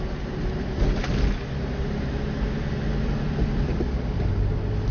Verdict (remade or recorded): recorded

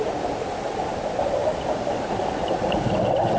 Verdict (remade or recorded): recorded